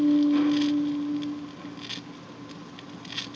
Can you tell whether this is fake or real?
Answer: real